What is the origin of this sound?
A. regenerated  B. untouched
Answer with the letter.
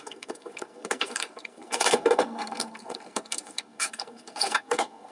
A